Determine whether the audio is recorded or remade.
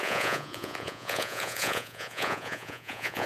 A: remade